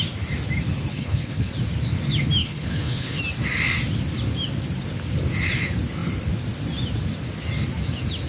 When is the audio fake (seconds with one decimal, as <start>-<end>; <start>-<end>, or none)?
0.9-1.5; 2.4-3.2